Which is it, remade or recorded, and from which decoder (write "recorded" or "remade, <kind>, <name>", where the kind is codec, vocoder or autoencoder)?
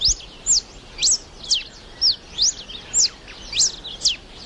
recorded